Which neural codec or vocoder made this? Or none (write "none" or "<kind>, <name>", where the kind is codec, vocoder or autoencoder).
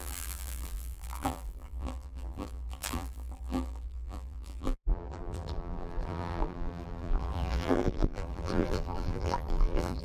vocoder, BigVGAN v2